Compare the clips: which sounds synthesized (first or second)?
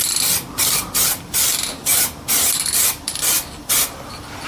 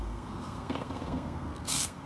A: second